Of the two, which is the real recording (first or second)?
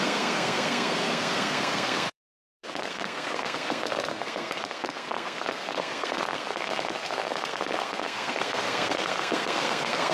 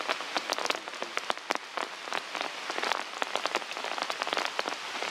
second